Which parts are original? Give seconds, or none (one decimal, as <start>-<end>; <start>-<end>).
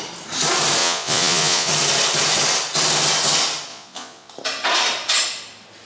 0.0-0.8; 1.7-3.7; 4.3-5.9